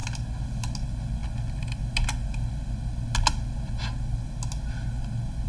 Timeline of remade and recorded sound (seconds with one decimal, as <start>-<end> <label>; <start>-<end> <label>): 0.0-5.5 recorded